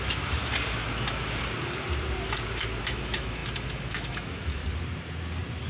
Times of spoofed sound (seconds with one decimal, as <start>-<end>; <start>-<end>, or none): 0.0-0.4; 2.8-4.6